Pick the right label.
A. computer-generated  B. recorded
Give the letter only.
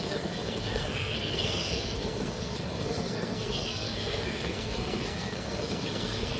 A